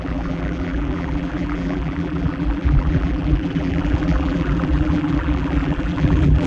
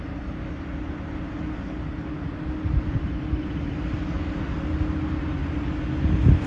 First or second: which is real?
second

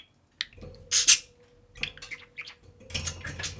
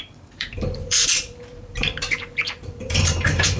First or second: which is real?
first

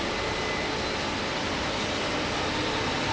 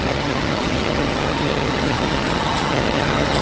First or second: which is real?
first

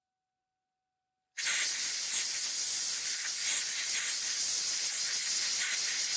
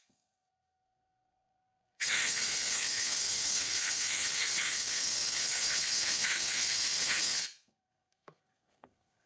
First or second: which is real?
first